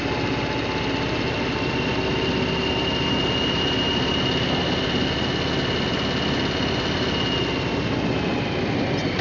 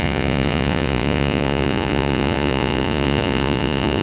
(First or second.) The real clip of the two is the first